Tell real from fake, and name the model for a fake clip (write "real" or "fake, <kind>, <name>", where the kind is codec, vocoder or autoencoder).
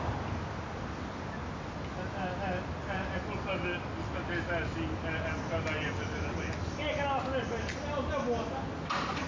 real